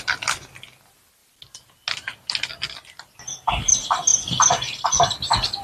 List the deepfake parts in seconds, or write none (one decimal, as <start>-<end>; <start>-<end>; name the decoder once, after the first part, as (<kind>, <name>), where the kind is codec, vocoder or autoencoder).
none